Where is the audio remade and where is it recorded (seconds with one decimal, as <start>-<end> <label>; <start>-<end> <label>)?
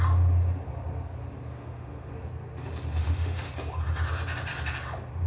0.0-1.5 recorded; 1.5-2.1 remade; 2.1-3.0 recorded; 3.0-3.5 remade; 3.5-5.3 recorded